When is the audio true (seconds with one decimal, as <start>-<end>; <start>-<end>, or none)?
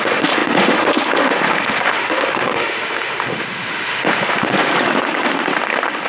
4.7-6.1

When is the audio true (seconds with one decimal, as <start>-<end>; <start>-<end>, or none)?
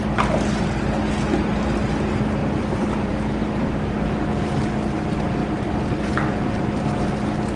0.0-2.4; 3.1-7.6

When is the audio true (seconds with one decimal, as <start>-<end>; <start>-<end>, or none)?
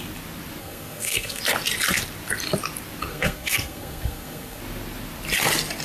0.0-0.6; 1.4-3.1; 4.6-5.8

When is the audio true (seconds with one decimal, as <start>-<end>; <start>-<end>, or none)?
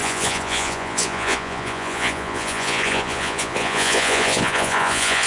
none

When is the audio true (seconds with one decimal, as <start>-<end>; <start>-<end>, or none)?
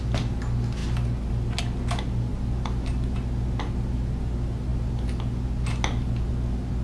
0.0-6.8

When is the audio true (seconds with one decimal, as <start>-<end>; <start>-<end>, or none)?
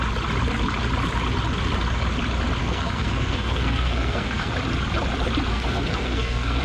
0.0-2.6; 4.5-5.5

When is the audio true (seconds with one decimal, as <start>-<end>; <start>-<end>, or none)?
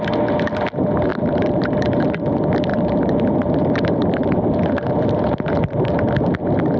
0.0-1.1; 2.0-2.7; 6.1-6.8